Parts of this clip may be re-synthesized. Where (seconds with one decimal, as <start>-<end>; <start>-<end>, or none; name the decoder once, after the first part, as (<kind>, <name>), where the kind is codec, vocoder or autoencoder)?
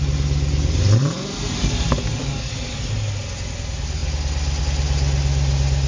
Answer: 2.2-2.9 (codec, DAC)